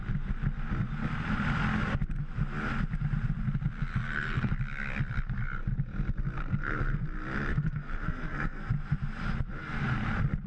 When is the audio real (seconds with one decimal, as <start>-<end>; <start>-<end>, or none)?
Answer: 0.0-3.9; 4.5-6.4; 7.0-7.5; 8.7-10.5